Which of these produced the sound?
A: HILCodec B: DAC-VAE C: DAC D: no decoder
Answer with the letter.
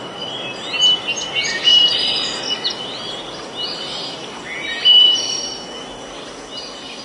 D